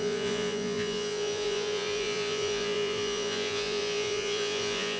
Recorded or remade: remade